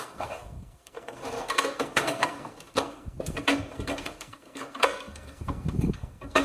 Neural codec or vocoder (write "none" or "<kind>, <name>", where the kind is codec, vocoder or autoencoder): codec, SNAC